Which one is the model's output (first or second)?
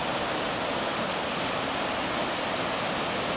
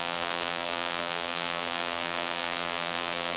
second